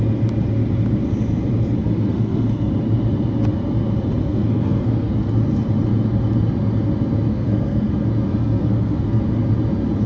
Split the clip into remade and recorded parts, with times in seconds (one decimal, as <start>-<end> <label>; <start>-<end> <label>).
0.0-1.8 recorded; 1.8-2.7 remade; 2.7-4.2 recorded; 4.2-5.1 remade; 5.1-7.3 recorded; 7.3-7.9 remade; 7.9-8.3 recorded; 8.3-9.2 remade; 9.2-10.1 recorded